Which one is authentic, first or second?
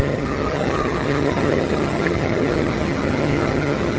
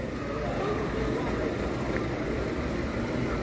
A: second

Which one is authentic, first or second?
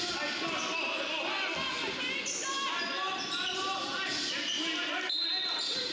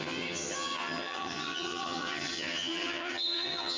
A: first